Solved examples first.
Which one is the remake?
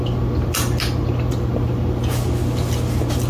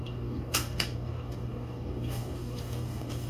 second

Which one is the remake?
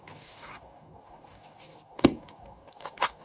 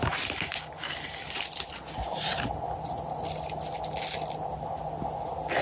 first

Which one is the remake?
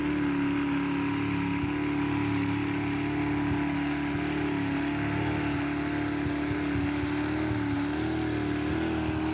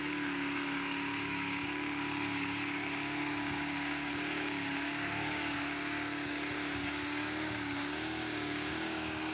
second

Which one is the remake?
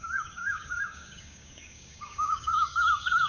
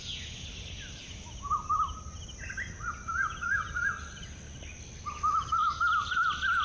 first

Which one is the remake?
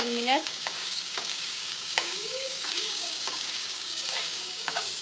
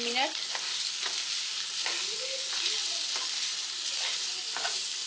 first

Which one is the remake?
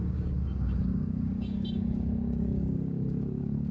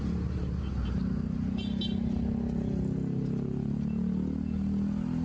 first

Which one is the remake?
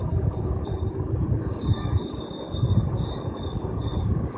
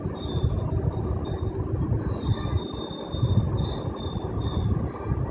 first